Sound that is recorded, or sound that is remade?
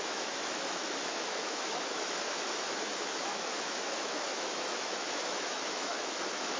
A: remade